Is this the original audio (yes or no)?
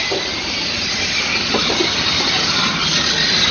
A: yes